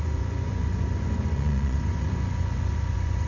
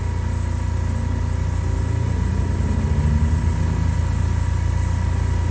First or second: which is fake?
first